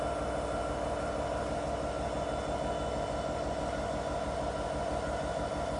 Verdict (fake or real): real